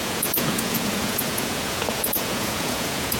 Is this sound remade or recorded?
remade